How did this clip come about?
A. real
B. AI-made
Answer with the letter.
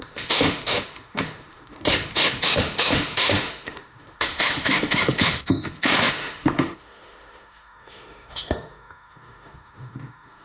B